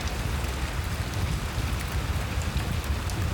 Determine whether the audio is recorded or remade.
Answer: recorded